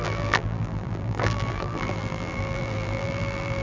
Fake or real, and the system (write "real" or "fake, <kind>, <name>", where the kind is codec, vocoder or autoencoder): fake, vocoder, BigVGAN v2